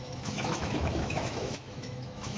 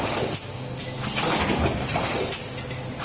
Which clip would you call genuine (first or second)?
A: second